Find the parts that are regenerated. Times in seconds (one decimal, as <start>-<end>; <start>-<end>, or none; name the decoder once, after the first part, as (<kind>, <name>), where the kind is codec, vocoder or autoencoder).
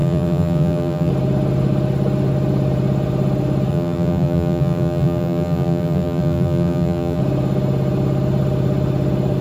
0.0-1.1 (vocoder, BigVGAN v2); 3.7-7.2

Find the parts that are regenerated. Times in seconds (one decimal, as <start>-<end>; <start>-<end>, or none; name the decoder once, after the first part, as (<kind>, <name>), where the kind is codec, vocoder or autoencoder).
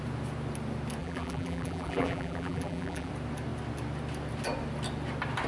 1.0-3.1 (vocoder, BigVGAN v2)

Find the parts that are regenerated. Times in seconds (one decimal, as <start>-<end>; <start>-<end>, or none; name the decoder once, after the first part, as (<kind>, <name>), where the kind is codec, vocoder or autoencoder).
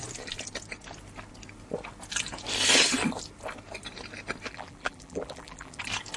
4.5-5.8 (vocoder, BigVGAN v2)